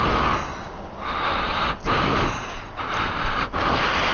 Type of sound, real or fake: real